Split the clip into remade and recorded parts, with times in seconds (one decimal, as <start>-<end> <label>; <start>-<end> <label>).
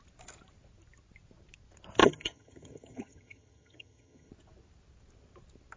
0.0-2.0 recorded; 2.0-4.3 remade; 4.3-5.8 recorded